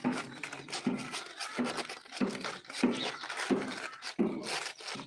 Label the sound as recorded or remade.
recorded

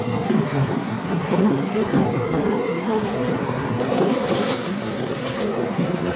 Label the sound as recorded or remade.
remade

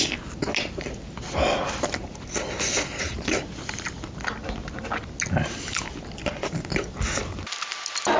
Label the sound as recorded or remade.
recorded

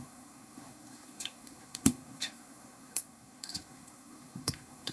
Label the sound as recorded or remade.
remade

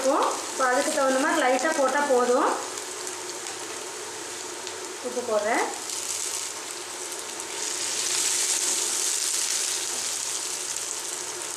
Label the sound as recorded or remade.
recorded